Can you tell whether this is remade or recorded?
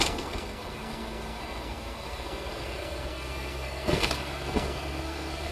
remade